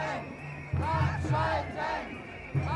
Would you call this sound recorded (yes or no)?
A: yes